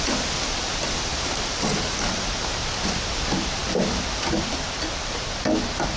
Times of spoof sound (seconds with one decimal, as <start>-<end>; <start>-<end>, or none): 2.6-4.9